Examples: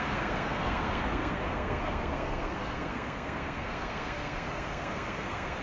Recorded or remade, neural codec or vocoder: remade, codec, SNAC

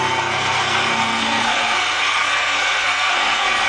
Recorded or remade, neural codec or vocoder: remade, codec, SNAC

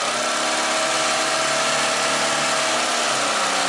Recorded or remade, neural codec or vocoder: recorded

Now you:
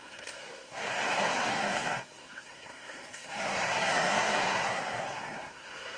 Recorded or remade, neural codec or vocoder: remade, codec, SNAC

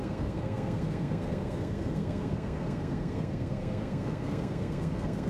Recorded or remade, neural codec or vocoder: remade, codec, SNAC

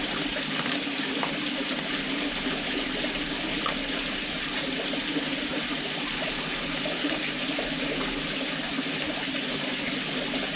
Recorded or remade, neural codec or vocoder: recorded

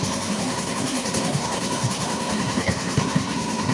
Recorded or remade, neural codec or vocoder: remade, codec, SNAC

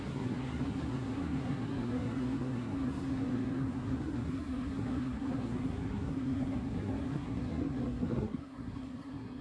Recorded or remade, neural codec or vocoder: remade, codec, SNAC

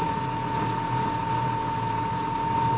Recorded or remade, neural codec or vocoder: recorded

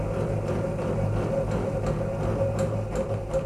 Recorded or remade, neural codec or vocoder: recorded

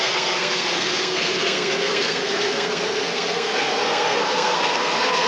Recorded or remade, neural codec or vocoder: remade, codec, SNAC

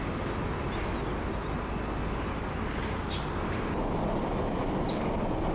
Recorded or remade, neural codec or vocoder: recorded